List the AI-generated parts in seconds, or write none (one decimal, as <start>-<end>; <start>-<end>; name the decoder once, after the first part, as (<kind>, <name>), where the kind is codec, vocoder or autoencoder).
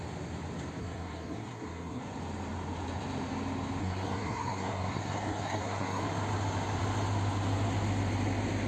0.8-2.0 (codec, SNAC); 3.8-6.0